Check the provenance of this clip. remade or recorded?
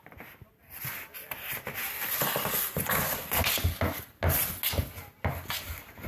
recorded